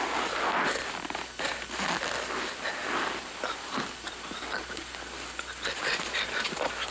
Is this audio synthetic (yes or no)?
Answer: no